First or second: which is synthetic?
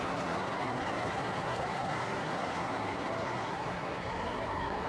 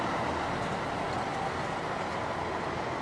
first